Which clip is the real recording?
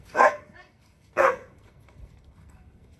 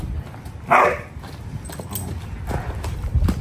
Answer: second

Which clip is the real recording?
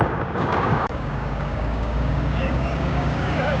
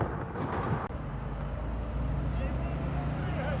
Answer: second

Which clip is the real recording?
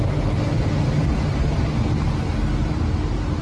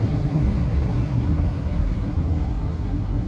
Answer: first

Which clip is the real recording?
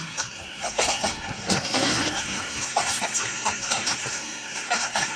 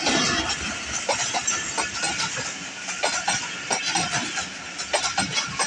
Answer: second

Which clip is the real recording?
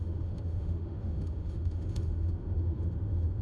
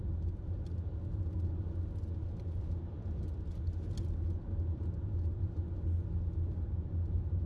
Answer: second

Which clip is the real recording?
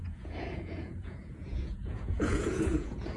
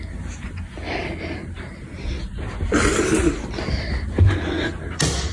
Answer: second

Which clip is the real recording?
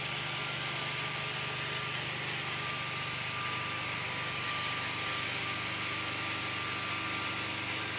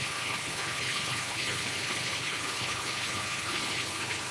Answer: first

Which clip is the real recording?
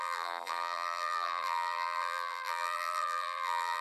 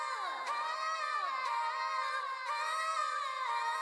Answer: second